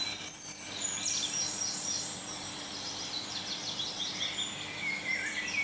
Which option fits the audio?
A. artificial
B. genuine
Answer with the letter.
A